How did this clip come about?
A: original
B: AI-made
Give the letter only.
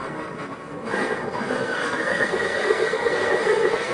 B